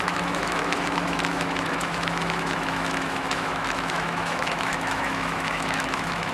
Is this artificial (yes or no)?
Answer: yes